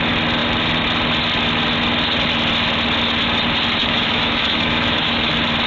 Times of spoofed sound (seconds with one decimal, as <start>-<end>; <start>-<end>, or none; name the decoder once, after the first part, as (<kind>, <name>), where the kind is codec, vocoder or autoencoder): 3.8-5.3 (autoencoder, DAC-VAE)